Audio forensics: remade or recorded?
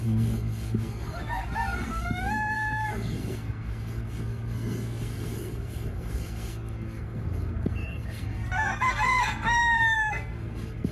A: remade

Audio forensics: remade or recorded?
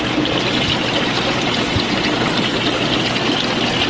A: recorded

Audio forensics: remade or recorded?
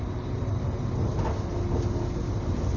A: recorded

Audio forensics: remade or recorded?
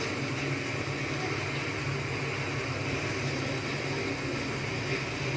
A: recorded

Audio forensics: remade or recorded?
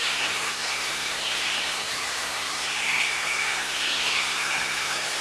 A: remade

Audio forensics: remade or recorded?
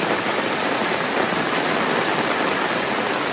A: recorded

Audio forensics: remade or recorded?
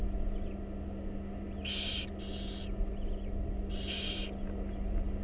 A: recorded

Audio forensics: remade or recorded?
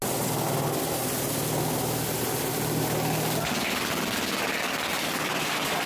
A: recorded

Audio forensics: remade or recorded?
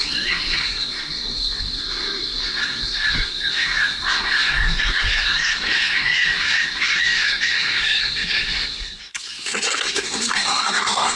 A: remade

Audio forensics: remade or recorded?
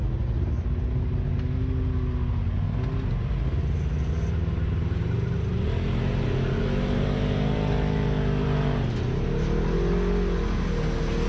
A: recorded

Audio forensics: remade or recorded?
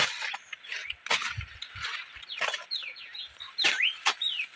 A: recorded